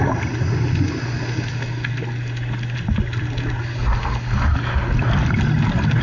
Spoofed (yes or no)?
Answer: no